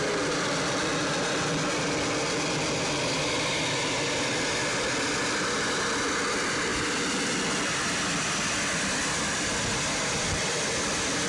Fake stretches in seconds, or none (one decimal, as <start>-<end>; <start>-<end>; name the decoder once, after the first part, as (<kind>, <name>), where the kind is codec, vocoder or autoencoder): none